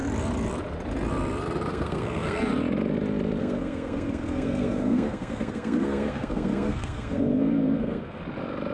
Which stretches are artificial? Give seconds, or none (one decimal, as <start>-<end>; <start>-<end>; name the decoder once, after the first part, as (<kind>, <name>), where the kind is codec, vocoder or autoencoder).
1.7-2.4 (codec, SNAC); 3.4-8.2